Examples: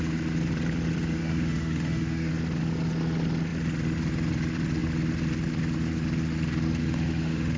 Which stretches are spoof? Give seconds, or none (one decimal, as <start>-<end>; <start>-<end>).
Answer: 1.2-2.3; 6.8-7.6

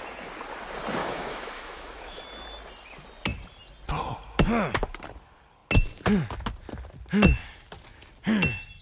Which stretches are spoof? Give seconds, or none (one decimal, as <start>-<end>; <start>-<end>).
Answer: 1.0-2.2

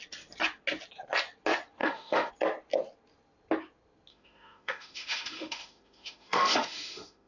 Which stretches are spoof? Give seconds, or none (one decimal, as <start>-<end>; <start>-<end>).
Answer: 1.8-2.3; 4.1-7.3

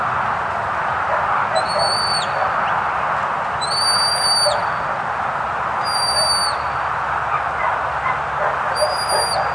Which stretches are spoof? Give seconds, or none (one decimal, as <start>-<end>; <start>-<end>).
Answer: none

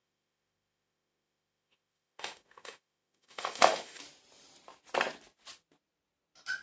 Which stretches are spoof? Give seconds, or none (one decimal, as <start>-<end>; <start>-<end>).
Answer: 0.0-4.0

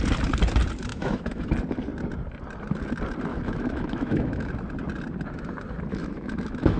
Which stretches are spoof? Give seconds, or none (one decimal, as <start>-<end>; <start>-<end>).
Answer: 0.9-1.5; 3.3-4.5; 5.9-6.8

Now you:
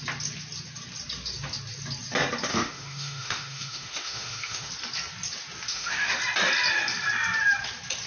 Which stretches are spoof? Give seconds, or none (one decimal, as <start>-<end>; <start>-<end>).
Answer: 2.5-4.7; 5.7-6.2